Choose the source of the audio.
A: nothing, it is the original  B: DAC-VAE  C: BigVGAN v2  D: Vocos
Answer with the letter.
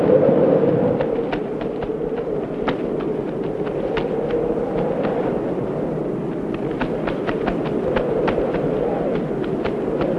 A